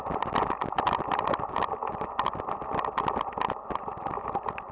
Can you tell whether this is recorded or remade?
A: recorded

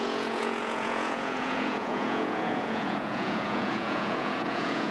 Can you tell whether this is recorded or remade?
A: remade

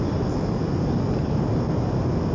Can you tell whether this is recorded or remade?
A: recorded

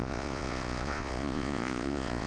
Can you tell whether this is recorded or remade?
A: remade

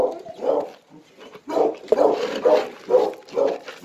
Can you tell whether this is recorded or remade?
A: recorded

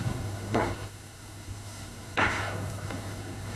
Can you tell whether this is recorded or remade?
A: remade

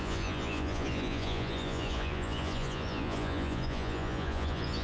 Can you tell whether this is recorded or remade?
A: remade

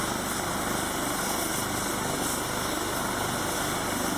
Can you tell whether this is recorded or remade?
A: recorded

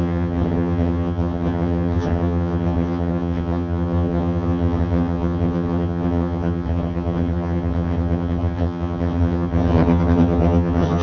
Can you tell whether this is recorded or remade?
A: remade